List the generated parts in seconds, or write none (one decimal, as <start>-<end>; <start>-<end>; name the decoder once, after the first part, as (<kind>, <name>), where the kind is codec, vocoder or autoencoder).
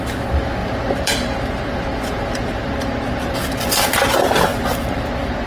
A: 0.6-3.9 (vocoder, BigVGAN v2); 4.5-5.5